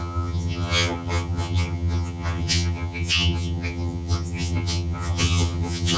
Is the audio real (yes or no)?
no